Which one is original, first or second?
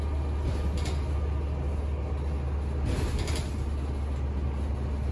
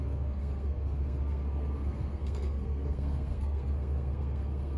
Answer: first